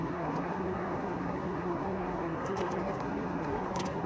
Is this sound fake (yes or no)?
yes